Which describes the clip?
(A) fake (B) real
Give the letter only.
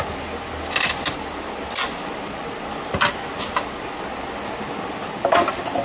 B